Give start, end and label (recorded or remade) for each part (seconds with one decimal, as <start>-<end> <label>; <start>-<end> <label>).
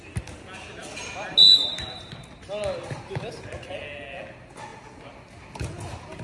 0.0-6.2 recorded